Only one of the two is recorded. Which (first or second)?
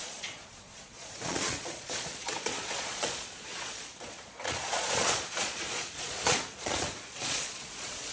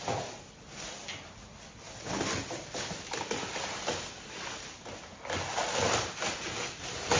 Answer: second